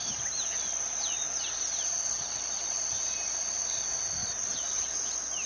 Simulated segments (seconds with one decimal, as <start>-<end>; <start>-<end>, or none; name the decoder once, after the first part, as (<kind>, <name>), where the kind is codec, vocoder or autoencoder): none